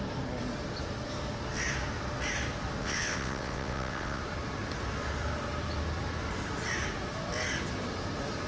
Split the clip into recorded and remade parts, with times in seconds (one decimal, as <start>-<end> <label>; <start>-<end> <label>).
0.0-2.8 recorded; 2.8-4.2 remade; 4.2-8.5 recorded